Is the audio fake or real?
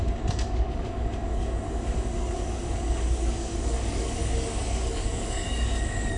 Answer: fake